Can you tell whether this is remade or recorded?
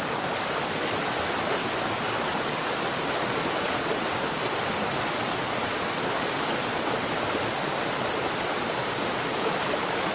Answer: recorded